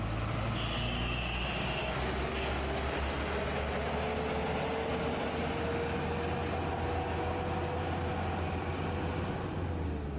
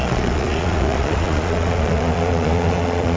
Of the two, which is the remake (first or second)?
second